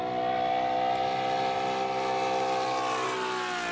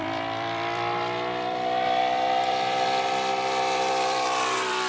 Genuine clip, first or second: first